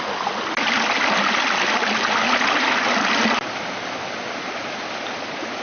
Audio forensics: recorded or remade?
recorded